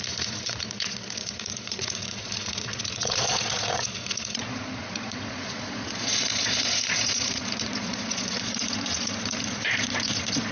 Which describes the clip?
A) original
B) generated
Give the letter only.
B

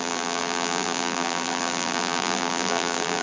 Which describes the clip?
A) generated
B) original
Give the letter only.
A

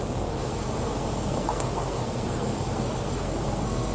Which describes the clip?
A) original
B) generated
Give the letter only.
B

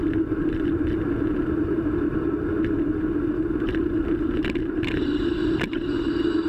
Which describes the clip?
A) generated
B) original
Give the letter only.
B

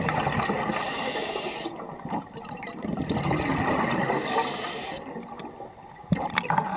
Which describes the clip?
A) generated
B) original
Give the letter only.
B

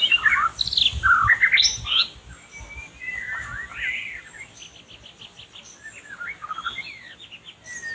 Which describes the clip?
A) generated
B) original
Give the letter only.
B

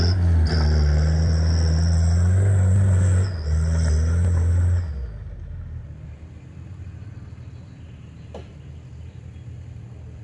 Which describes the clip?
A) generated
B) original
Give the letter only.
B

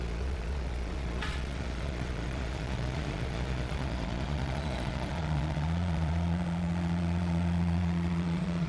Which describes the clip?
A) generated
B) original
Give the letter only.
A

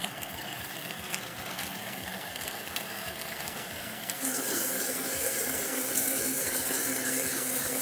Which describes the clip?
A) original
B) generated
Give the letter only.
B